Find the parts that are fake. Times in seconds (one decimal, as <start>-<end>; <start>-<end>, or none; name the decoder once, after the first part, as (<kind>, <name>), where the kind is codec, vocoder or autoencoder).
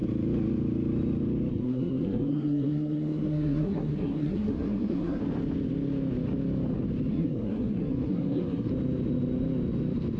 1.5-5.2 (codec, SNAC); 7.1-8.7